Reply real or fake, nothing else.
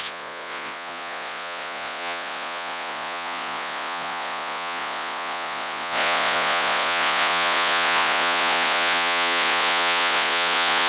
fake